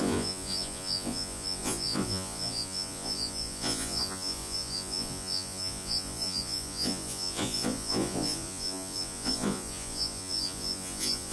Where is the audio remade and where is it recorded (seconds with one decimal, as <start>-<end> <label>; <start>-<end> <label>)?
0.0-11.3 remade